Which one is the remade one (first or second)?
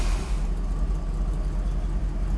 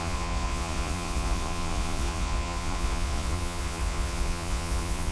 second